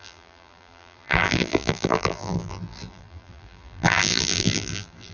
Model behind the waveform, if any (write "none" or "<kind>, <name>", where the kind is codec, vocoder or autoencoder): vocoder, BigVGAN v2